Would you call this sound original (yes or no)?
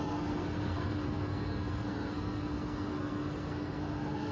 no